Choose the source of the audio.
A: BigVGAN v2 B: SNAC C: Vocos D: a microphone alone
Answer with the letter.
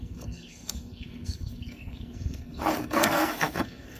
B